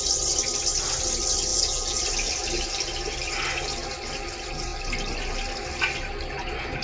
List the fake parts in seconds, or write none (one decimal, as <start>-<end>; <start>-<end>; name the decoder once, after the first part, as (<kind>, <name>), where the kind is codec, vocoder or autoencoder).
1.5-2.0 (vocoder, Vocos)